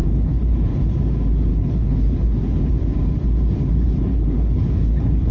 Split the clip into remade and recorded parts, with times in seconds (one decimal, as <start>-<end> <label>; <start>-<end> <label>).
0.0-1.0 remade; 1.0-1.5 recorded; 1.5-2.7 remade; 2.7-3.6 recorded; 3.6-5.3 remade